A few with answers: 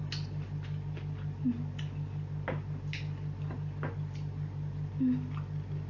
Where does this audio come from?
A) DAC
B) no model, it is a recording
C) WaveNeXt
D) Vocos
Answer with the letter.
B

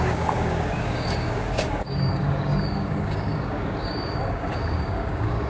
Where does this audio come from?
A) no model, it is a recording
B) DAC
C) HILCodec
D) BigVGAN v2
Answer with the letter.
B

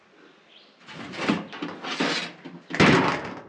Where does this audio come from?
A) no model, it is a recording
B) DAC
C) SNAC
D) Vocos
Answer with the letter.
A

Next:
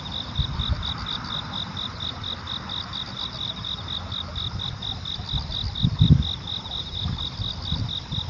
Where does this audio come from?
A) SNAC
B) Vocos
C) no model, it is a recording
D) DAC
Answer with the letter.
C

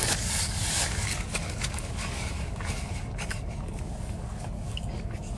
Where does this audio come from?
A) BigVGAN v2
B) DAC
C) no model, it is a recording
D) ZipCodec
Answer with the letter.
B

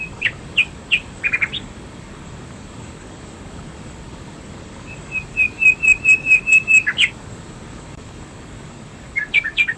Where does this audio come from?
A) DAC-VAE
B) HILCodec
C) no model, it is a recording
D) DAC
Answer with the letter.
D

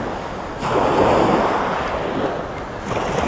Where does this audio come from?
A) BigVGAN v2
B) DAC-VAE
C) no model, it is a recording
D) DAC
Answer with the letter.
C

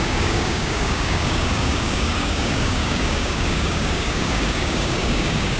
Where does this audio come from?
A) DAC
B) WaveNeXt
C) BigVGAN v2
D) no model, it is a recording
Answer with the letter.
A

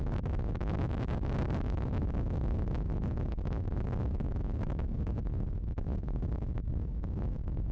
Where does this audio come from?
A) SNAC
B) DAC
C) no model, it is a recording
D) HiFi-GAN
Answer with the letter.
B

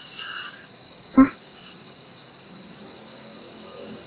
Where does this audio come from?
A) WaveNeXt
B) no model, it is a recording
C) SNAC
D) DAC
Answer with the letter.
D